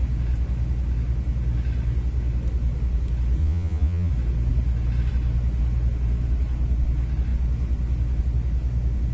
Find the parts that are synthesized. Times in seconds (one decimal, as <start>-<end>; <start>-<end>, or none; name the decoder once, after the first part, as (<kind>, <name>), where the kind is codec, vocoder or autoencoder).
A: 3.4-4.1 (vocoder, Vocos)